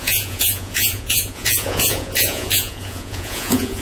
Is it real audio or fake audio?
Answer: fake